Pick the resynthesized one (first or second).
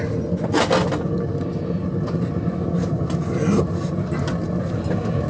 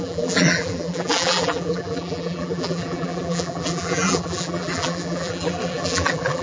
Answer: second